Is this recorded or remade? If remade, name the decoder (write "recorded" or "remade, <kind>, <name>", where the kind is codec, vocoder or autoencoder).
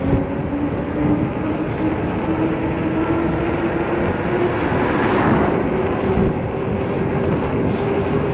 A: recorded